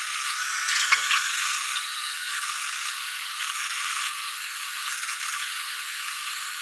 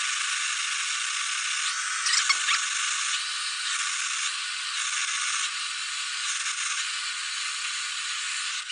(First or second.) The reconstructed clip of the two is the first